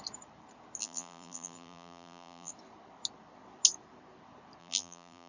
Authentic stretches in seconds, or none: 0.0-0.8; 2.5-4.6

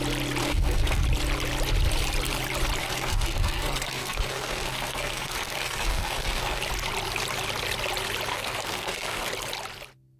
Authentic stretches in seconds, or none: 0.0-0.4; 1.0-2.8; 6.6-8.3; 9.3-10.2

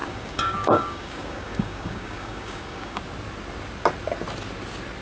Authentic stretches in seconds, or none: 3.0-5.0

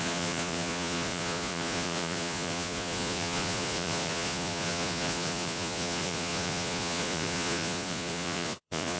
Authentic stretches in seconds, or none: none

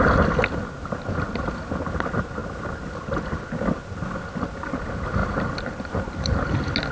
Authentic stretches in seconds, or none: 0.0-6.9

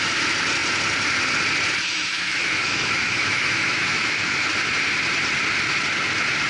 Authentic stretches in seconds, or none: 0.0-1.9; 4.5-6.5

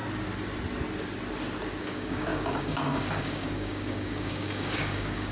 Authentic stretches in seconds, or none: 0.0-1.8